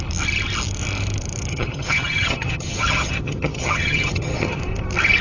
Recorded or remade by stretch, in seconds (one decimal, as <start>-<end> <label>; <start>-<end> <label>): 0.0-1.5 recorded; 1.5-4.6 remade; 4.6-5.2 recorded